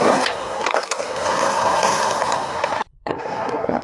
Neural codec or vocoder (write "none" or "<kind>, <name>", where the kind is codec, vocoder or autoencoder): codec, SNAC